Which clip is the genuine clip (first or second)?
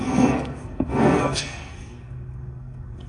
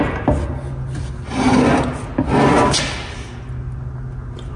second